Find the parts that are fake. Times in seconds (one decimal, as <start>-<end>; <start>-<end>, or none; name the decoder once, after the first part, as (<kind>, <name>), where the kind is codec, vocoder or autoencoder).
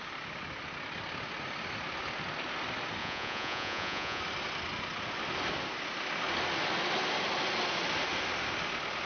3.0-4.2 (vocoder, Vocos)